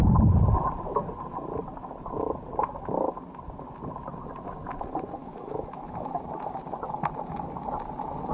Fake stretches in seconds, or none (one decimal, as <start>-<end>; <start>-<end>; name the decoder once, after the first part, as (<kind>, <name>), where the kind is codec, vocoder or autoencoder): 5.2-6.2 (autoencoder, DAC-VAE)